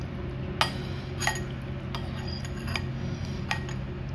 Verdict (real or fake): real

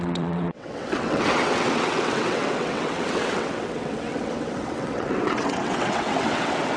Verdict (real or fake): fake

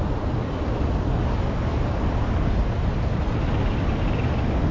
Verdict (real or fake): real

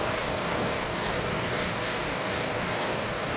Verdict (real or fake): fake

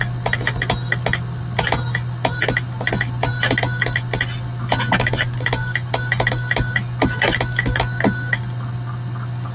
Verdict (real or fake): real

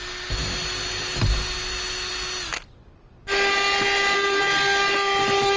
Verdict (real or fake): real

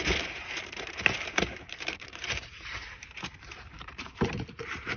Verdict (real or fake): fake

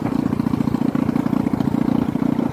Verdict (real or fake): real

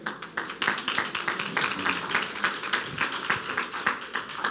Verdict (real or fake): real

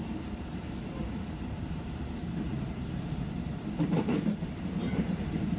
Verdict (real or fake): fake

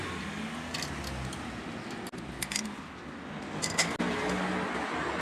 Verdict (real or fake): real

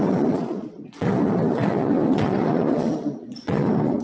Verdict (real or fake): fake